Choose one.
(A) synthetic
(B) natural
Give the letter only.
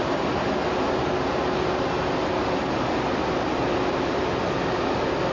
B